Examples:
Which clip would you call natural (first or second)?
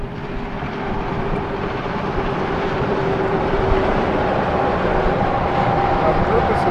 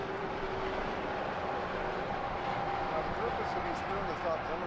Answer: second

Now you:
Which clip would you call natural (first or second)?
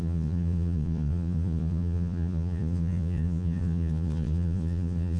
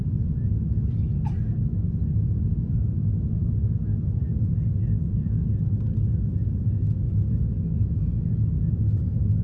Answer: second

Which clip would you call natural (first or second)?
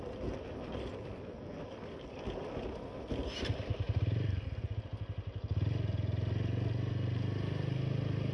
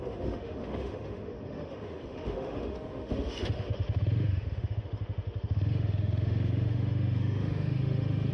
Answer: first